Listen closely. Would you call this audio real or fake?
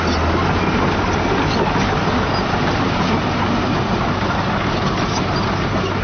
real